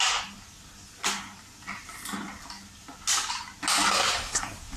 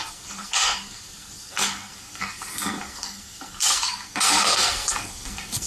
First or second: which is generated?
second